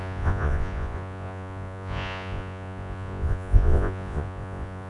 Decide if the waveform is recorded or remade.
remade